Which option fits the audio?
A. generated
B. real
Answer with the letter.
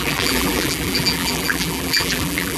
A